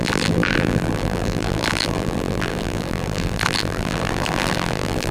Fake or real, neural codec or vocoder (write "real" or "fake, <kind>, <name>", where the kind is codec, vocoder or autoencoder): fake, vocoder, BigVGAN v2